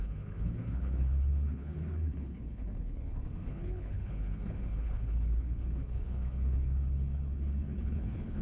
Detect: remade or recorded remade